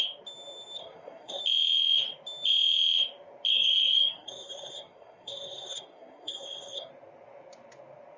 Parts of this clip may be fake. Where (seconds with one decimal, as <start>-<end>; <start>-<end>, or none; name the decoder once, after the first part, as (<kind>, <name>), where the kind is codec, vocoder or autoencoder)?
0.8-1.4 (codec, SNAC); 3.5-6.9